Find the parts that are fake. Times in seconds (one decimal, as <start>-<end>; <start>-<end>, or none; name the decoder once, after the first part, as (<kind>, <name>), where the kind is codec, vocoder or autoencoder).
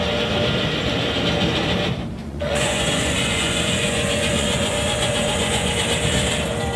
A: 2.2-5.7 (vocoder, Vocos)